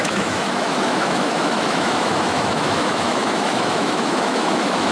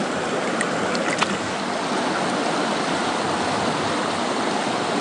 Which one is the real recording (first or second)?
second